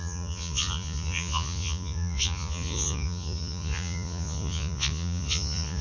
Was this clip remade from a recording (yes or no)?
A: yes